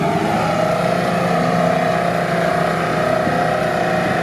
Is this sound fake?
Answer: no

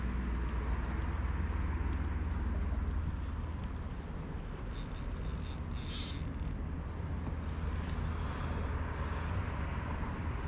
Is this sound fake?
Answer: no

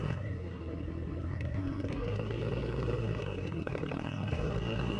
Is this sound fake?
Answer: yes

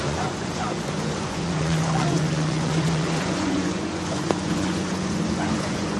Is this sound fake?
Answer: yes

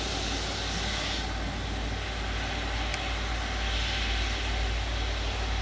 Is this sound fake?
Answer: no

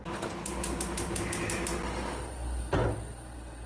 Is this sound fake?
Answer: no